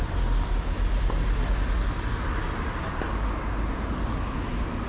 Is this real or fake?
real